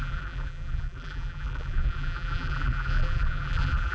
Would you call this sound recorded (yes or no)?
no